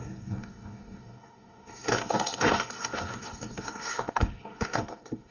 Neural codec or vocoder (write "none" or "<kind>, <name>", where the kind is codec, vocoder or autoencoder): codec, SNAC